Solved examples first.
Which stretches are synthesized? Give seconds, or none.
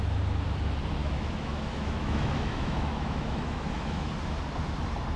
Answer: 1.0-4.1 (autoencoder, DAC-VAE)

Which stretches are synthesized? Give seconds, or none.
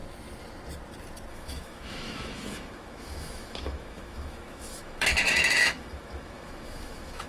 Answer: 1.3-7.3 (autoencoder, DAC-VAE)